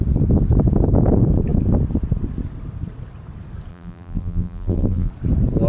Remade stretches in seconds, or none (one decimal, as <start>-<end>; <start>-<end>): 3.7-5.1